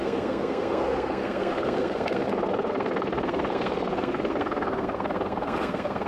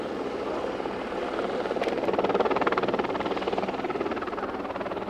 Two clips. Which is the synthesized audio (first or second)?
first